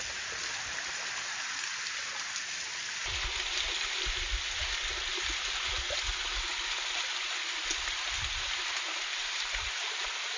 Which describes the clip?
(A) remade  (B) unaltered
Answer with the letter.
B